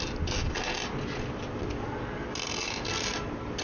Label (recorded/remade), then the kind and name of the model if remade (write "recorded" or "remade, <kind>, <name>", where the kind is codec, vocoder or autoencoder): recorded